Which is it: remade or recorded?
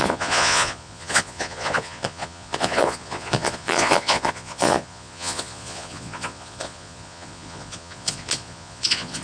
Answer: remade